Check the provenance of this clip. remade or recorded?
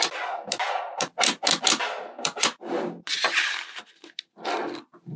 recorded